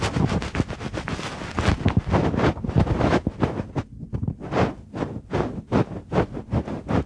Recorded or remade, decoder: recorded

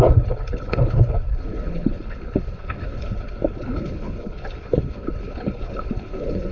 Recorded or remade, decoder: remade, codec, HILCodec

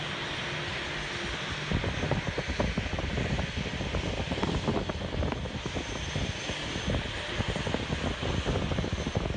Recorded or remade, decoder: recorded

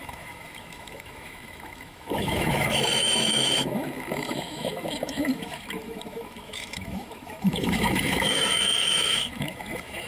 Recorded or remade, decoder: remade, autoencoder, DAC-VAE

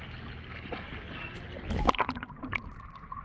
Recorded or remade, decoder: recorded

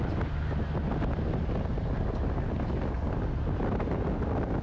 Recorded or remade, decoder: recorded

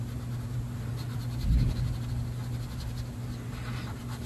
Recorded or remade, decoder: recorded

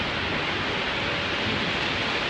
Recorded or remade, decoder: recorded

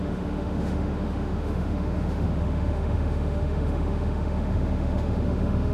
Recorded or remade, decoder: remade, autoencoder, DAC-VAE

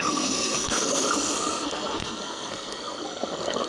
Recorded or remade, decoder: remade, codec, SNAC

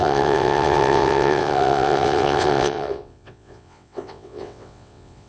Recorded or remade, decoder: remade, vocoder, WaveNeXt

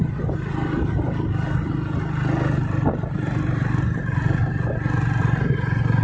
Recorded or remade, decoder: recorded